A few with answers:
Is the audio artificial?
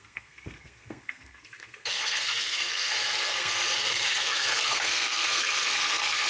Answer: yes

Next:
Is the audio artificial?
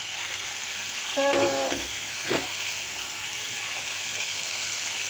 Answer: yes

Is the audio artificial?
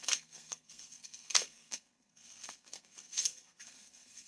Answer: yes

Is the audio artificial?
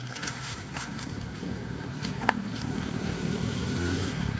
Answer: yes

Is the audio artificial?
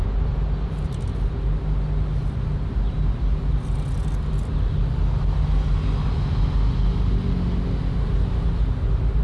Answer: no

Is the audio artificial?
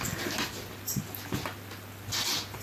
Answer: no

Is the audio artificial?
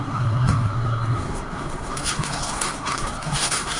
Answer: yes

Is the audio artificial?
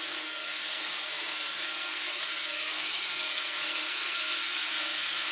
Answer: yes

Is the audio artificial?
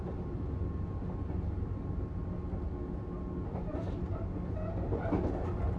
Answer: no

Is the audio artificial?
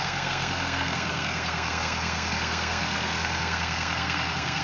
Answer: yes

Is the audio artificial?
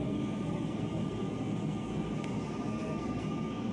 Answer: yes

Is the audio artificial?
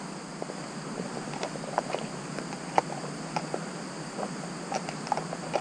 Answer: no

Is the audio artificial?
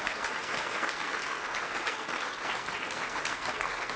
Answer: yes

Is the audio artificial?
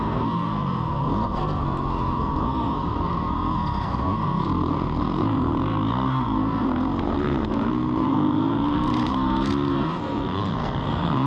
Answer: yes